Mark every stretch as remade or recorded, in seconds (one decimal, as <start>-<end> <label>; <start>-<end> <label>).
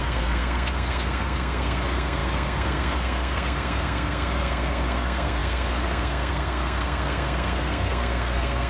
0.0-8.7 remade